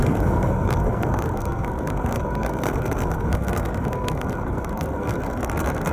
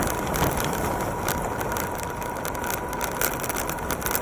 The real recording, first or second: second